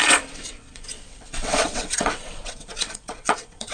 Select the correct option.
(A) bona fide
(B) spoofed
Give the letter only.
B